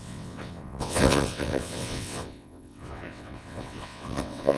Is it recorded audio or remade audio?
remade